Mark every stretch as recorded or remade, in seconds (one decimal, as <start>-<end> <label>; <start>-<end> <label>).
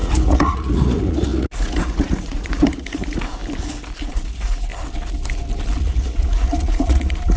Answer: 0.0-3.4 remade; 3.4-4.0 recorded; 4.0-4.7 remade; 4.7-5.8 recorded; 5.8-7.4 remade